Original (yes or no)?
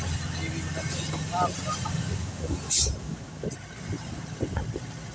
yes